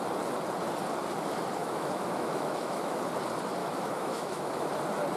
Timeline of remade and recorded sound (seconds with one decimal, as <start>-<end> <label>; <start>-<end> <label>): 0.0-1.6 recorded; 1.6-3.0 remade; 3.0-3.6 recorded; 3.6-4.7 remade; 4.7-5.2 recorded